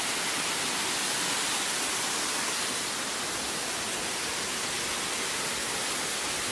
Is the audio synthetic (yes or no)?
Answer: no